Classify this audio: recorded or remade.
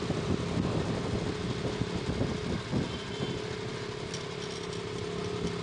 recorded